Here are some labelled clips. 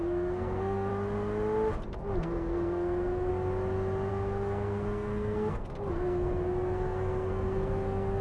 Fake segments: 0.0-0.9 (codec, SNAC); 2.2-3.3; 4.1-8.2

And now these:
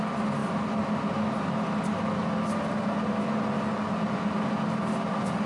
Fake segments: none

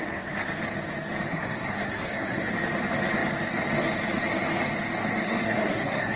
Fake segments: 1.3-2.5 (codec, SNAC); 5.0-6.2

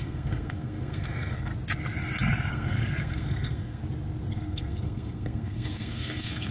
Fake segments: 0.0-1.5 (codec, SNAC); 2.5-3.8; 4.3-6.5

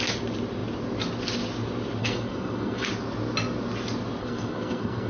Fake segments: 2.0-2.9 (codec, SNAC); 4.2-5.1

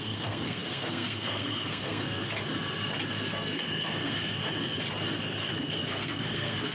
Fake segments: 0.0-2.2 (codec, SNAC); 3.1-4.4; 5.5-6.7